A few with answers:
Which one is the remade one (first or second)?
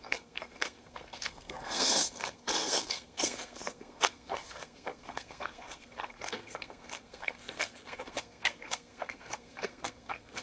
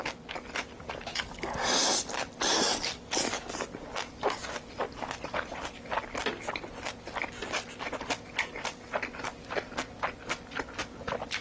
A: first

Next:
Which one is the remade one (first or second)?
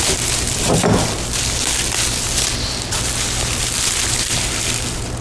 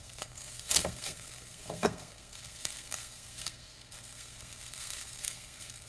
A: second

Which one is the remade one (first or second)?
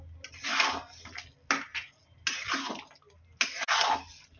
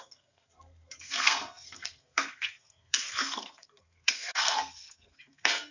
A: second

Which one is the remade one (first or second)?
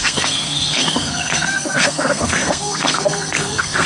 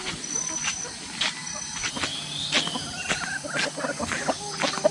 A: first